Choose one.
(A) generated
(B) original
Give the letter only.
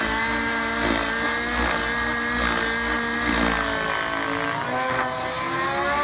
B